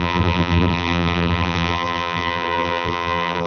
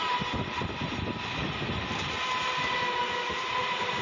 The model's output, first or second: first